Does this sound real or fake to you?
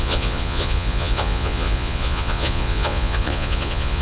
fake